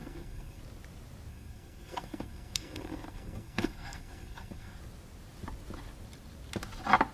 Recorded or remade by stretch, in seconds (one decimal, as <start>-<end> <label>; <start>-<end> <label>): 0.0-0.6 remade; 0.6-1.3 recorded; 1.3-4.8 remade; 4.8-7.1 recorded